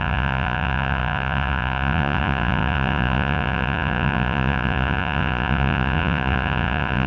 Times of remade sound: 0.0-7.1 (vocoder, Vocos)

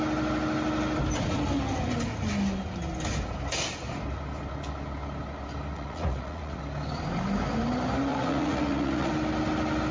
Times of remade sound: 5.7-6.6 (vocoder, Vocos); 8.1-9.1

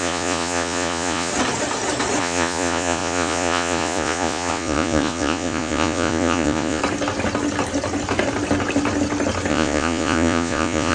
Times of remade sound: 0.0-1.3 (vocoder, Vocos); 2.2-6.8; 9.5-10.9

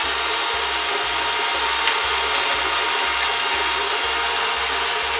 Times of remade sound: none

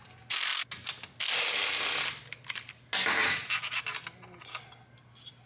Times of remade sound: none

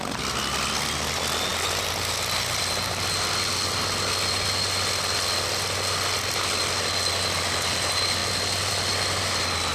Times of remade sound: none

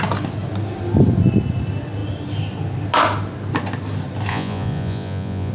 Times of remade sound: 4.3-5.5 (vocoder, Vocos)